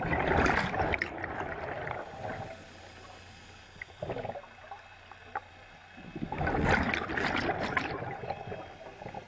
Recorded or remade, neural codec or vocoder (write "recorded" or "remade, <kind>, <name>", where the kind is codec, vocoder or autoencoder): recorded